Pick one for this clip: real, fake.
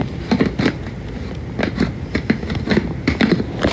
real